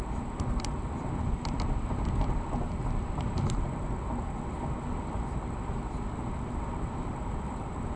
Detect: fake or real fake